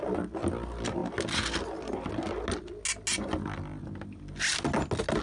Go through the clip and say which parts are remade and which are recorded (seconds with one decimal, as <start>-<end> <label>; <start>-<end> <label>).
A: 0.0-5.2 recorded